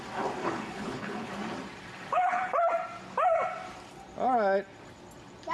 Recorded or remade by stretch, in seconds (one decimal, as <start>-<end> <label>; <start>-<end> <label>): 0.0-0.4 recorded; 0.4-1.3 remade; 1.3-2.1 recorded; 2.1-2.7 remade; 2.7-5.5 recorded